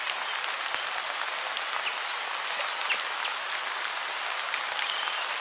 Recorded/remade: recorded